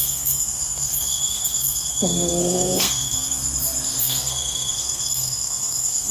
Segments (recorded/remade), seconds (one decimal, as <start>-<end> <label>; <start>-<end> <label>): 0.0-3.4 remade; 3.4-4.0 recorded; 4.0-6.1 remade